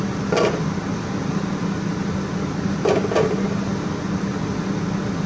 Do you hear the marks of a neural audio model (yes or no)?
no